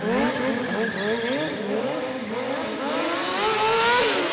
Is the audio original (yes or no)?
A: yes